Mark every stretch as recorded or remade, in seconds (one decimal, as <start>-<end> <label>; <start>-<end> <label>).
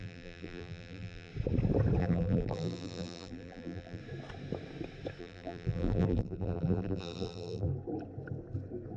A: 0.0-1.3 remade; 1.3-2.0 recorded; 2.0-4.0 remade; 4.0-5.2 recorded; 5.2-7.7 remade; 7.7-9.0 recorded